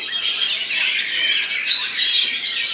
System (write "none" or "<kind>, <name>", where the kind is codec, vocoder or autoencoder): none